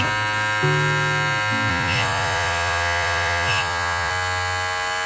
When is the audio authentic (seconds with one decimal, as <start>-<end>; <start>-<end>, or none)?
0.0-1.7; 4.1-5.1